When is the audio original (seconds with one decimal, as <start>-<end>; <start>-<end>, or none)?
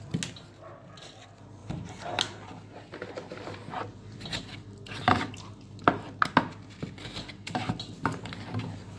0.0-9.0